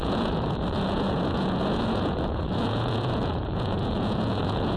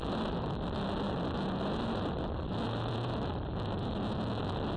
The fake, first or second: first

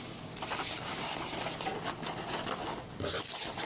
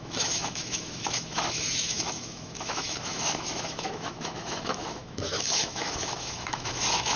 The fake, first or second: second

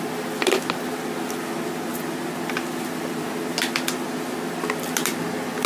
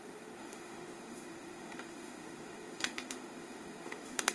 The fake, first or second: second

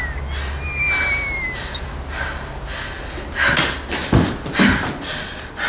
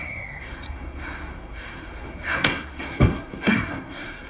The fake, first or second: second